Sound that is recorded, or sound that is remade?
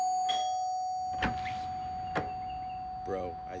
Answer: recorded